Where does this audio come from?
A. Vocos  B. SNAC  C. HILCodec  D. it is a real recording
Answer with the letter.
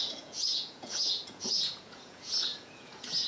A